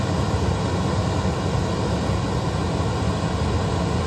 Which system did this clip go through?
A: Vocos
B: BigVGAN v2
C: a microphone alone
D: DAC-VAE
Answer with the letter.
C